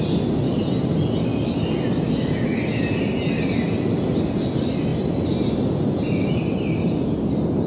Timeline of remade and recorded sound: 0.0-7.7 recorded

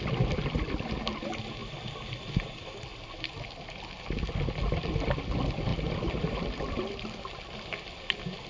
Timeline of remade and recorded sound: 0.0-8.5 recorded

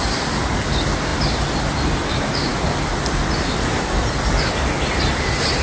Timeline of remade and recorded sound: 0.0-5.6 recorded

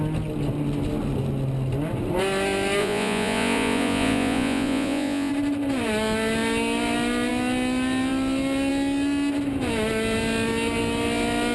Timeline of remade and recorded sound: 0.0-2.8 recorded; 2.8-5.3 remade; 5.3-11.5 recorded

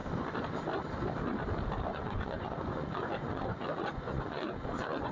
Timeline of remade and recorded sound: 0.0-1.9 recorded; 1.9-5.1 remade

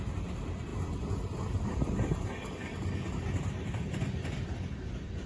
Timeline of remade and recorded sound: 0.0-5.3 recorded